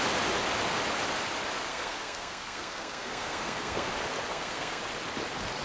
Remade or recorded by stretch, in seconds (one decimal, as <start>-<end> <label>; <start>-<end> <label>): 0.0-1.7 recorded; 1.7-3.9 remade; 3.9-4.3 recorded; 4.3-4.8 remade; 4.8-5.6 recorded